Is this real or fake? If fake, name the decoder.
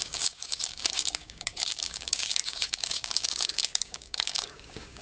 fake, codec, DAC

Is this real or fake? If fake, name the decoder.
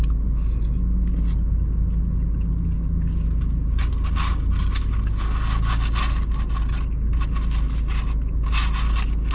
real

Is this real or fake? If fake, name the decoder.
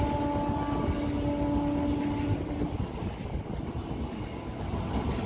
real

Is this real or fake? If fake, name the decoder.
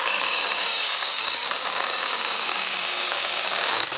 fake, codec, DAC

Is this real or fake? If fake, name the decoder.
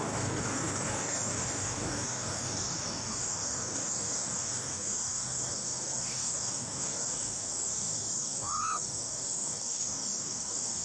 fake, codec, DAC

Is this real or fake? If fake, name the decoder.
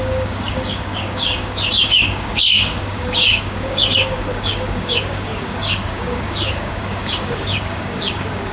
fake, codec, DAC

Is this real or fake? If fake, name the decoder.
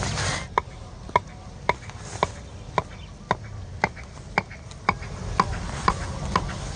real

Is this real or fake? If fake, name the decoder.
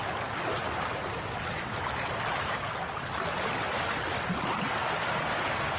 real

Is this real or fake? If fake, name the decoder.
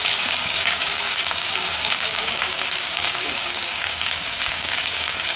fake, codec, DAC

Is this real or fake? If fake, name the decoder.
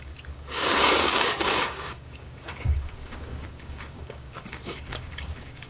fake, codec, DAC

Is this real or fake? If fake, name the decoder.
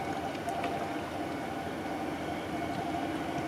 real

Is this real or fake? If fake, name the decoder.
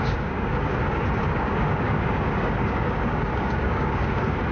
fake, codec, DAC